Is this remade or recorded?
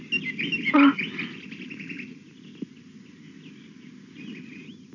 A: recorded